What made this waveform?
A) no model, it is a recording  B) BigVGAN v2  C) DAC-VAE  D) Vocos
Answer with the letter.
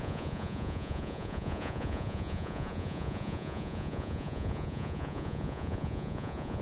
D